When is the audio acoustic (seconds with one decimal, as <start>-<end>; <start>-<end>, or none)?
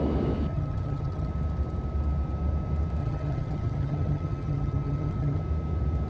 0.0-0.5; 1.3-3.0; 5.4-6.1